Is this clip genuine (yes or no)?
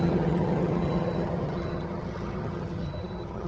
no